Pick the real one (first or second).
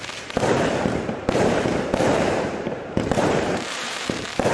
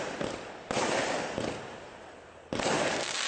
second